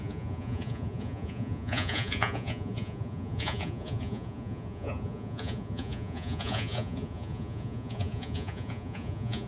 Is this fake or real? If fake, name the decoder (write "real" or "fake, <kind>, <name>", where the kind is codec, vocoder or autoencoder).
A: fake, vocoder, Vocos